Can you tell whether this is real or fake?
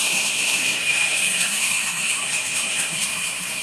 fake